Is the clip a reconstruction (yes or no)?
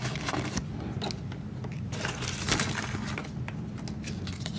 no